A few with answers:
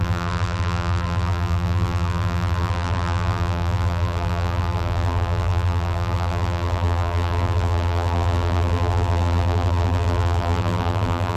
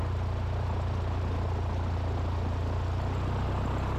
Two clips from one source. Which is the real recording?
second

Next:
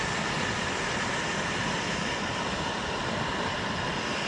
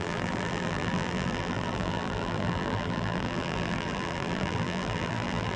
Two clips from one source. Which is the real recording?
first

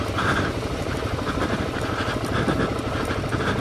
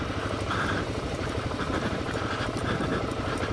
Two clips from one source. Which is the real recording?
first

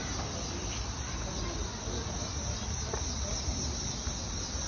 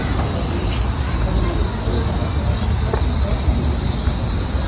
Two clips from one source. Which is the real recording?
second